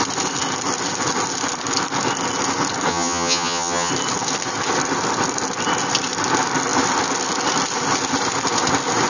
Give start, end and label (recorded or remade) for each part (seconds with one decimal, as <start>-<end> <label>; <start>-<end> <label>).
0.0-2.9 recorded; 2.9-3.9 remade; 3.9-9.1 recorded

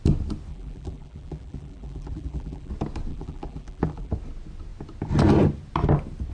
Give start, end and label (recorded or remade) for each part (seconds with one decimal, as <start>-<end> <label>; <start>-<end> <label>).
0.0-0.5 recorded; 0.5-2.7 remade; 2.7-3.1 recorded; 3.1-4.1 remade; 4.1-6.3 recorded

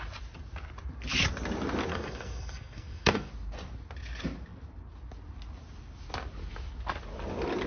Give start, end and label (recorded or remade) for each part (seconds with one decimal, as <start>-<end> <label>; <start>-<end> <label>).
0.0-1.9 recorded; 1.9-3.3 remade; 3.3-7.7 recorded

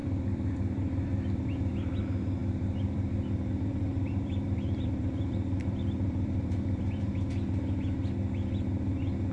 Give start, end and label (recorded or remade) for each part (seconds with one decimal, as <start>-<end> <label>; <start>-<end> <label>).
0.0-2.0 remade; 2.0-2.4 recorded; 2.4-7.1 remade; 7.1-9.3 recorded